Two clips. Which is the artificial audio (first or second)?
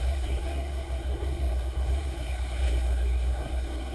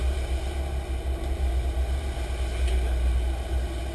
first